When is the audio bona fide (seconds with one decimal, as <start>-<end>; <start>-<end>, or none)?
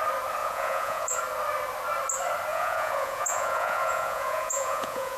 0.0-0.4; 1.2-2.5